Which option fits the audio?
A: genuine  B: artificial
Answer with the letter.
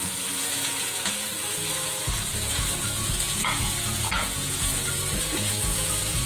B